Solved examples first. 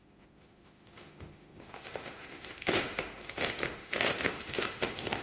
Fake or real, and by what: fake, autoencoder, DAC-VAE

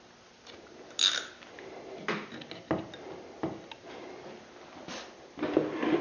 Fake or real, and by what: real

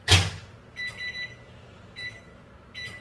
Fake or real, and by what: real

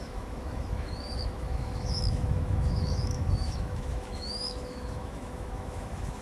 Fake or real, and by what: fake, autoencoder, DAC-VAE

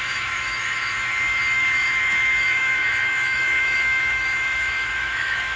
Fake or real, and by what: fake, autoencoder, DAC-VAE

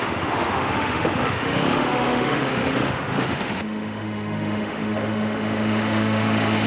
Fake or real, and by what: fake, autoencoder, DAC-VAE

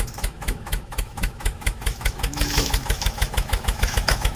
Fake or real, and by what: fake, autoencoder, DAC-VAE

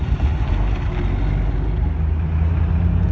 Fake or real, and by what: real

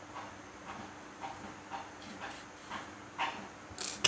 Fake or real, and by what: real